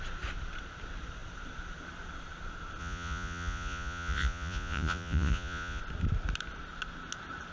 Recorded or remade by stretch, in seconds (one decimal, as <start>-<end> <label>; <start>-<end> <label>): 0.0-2.8 recorded; 2.8-5.8 remade; 5.8-7.5 recorded

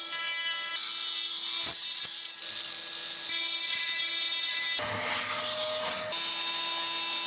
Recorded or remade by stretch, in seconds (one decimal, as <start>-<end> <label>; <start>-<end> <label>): 0.0-7.3 recorded

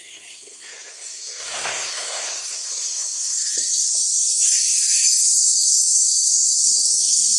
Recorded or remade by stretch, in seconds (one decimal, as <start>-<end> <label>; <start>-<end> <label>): 0.0-7.4 remade

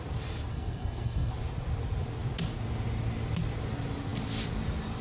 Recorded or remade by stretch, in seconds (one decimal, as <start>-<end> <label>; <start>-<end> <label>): 0.0-0.5 recorded; 0.5-1.3 remade; 1.3-5.0 recorded

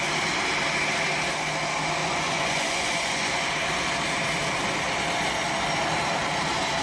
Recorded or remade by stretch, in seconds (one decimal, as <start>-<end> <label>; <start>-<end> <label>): 0.0-2.0 recorded; 2.0-3.5 remade; 3.5-6.8 recorded